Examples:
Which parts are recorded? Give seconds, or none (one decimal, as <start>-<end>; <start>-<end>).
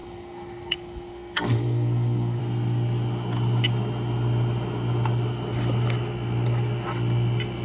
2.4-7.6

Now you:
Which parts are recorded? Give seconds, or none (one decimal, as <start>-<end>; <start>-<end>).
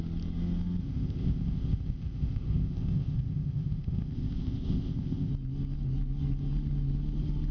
0.0-0.8; 5.3-7.5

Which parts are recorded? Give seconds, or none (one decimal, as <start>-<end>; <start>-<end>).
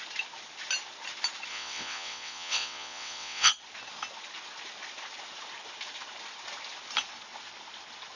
0.0-1.5; 3.5-8.2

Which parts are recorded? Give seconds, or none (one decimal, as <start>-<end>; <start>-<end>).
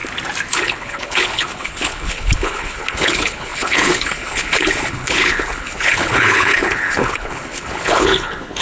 0.0-0.5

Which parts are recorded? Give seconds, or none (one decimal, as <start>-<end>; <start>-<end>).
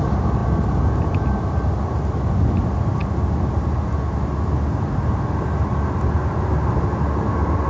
0.0-7.7